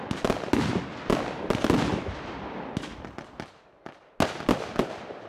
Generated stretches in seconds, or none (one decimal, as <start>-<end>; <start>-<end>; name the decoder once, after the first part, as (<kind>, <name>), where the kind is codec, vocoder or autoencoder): none